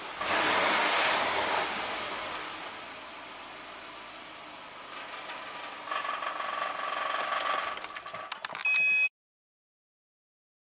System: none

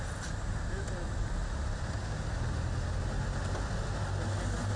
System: none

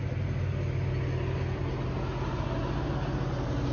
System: none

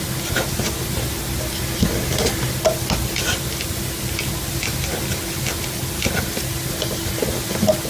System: none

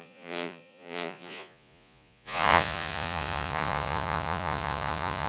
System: vocoder, Vocos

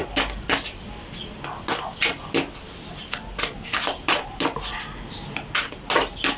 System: none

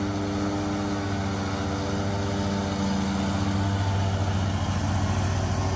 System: none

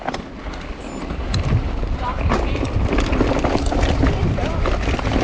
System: none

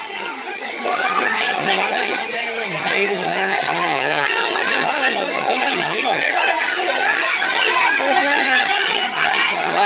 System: vocoder, HiFi-GAN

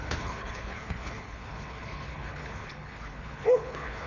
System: codec, HILCodec